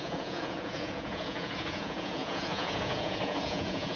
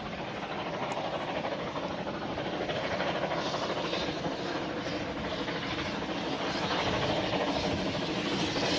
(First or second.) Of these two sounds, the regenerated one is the first